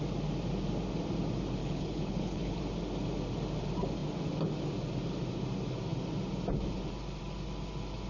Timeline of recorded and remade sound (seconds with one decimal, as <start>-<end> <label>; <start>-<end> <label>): 0.0-1.6 recorded; 1.6-2.6 remade; 2.6-8.1 recorded